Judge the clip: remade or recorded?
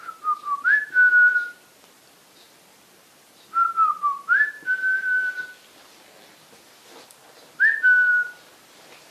recorded